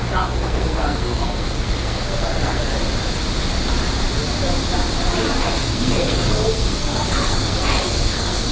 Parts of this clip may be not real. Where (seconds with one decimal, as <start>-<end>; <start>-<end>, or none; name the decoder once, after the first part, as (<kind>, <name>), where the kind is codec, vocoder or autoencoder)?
0.0-2.7 (codec, SNAC); 5.4-8.5